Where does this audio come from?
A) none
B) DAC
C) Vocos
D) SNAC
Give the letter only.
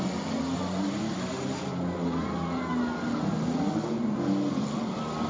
A